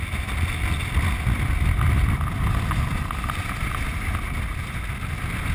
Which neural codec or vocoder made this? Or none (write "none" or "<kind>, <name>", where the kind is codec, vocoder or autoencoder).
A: none